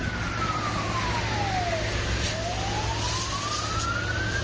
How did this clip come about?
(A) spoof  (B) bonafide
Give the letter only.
B